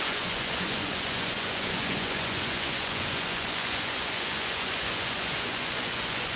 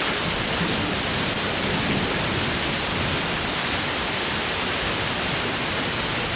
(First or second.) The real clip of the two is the second